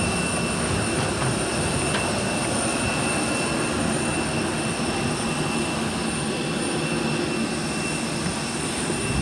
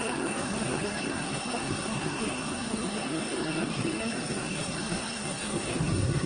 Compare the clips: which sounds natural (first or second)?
first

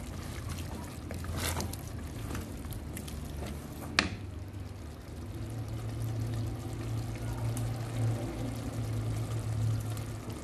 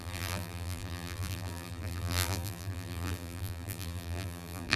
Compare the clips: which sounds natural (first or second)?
first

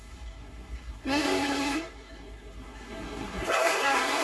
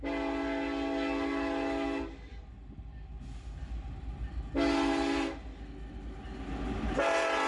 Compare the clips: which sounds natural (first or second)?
second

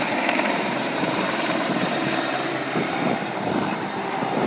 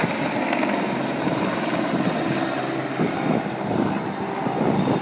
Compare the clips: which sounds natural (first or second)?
second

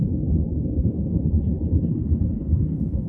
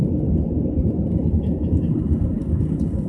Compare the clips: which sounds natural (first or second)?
second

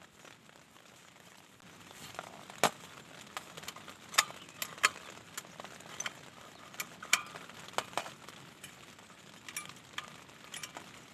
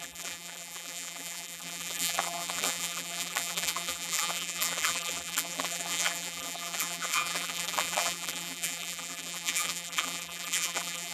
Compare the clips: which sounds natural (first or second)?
first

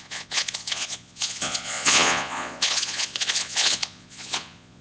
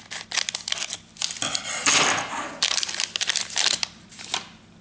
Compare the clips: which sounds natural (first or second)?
second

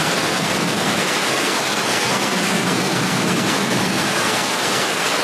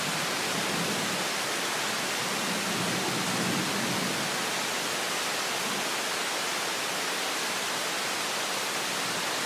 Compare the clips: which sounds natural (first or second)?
second